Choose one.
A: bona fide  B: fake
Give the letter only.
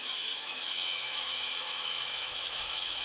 B